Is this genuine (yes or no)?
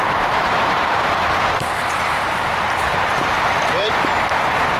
no